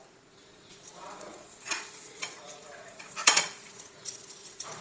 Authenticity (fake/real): fake